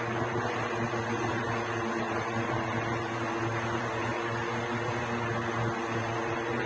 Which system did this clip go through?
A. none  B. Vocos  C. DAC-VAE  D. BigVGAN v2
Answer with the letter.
A